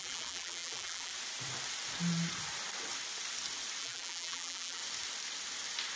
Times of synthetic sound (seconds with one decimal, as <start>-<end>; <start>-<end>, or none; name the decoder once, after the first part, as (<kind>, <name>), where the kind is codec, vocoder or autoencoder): 0.0-1.1 (vocoder, BigVGAN v2); 3.8-4.8